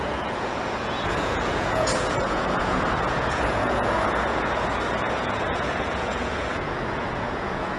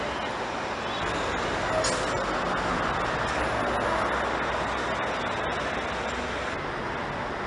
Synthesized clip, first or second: first